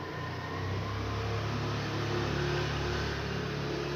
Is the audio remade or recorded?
recorded